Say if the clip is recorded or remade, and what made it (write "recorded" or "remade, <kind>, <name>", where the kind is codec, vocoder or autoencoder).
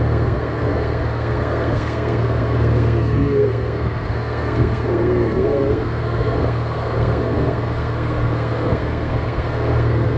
remade, codec, SNAC